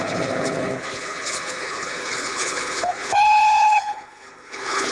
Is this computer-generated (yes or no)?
yes